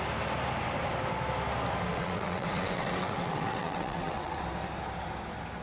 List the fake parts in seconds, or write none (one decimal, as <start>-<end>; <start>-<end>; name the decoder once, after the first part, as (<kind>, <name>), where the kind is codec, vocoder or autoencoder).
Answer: 1.9-4.4 (vocoder, WaveNeXt)